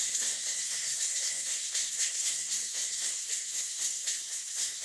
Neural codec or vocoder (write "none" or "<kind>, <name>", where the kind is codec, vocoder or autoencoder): codec, SNAC